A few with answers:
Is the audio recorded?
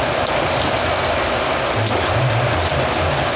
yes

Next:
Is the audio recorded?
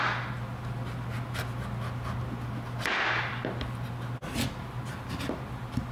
yes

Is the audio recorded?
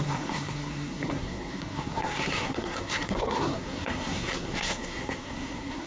no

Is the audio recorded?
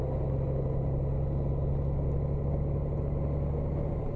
yes